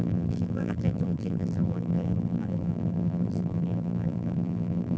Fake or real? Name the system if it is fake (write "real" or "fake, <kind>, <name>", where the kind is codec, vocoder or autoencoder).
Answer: fake, vocoder, BigVGAN v2